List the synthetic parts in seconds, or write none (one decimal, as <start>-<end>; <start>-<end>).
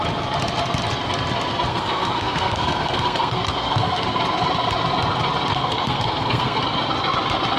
1.7-4.0; 5.5-6.6